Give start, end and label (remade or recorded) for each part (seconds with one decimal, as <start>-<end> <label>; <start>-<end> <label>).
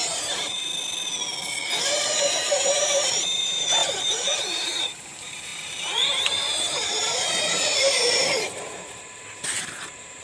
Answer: 0.0-1.8 recorded; 1.8-10.2 remade